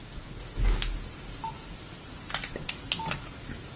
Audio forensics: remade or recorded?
recorded